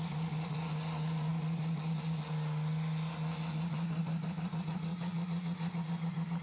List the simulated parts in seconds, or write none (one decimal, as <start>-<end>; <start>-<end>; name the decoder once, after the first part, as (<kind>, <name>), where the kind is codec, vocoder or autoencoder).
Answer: 4.9-6.4 (vocoder, Vocos)